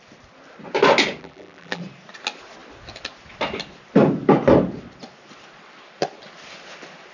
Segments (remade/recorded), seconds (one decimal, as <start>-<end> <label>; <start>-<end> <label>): 0.0-1.2 recorded; 1.2-1.8 remade; 1.8-7.1 recorded